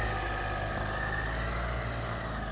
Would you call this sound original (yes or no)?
yes